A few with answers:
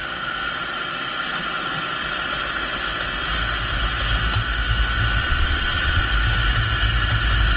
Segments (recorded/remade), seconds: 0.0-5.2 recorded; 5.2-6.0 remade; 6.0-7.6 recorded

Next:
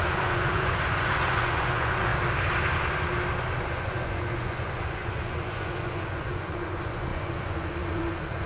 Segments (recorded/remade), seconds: 0.0-2.1 remade; 2.1-3.7 recorded; 3.7-8.5 remade

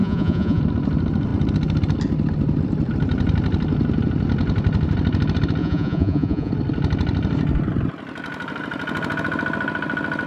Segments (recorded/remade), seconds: 0.0-0.6 remade; 0.6-5.6 recorded; 5.6-6.5 remade; 6.5-10.3 recorded

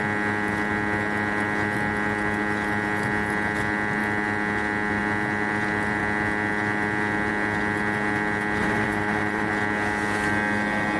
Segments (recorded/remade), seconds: 0.0-8.6 recorded; 8.6-9.5 remade; 9.5-11.0 recorded

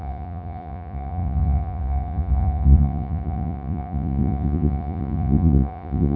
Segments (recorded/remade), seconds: 0.0-6.2 remade